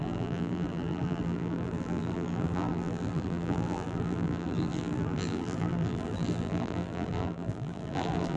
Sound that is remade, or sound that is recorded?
remade